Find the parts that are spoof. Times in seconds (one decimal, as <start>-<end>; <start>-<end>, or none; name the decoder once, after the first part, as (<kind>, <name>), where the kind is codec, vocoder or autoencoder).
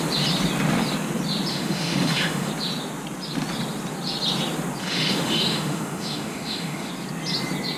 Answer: 1.5-2.5 (autoencoder, DAC-VAE); 4.8-6.9